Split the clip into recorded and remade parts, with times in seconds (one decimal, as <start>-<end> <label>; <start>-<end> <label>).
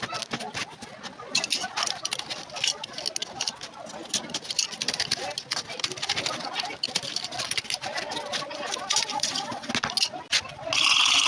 0.0-9.1 recorded; 9.1-9.7 remade; 9.7-11.3 recorded